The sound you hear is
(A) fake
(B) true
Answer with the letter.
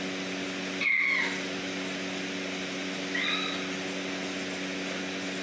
B